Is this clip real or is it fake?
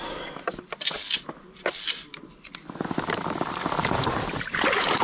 real